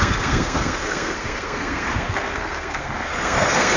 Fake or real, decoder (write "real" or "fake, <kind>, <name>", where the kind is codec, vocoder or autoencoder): fake, codec, SNAC